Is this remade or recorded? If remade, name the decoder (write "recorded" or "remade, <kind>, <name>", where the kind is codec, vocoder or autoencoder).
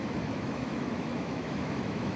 remade, autoencoder, DAC-VAE